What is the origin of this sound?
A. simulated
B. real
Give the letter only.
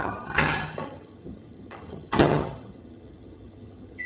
A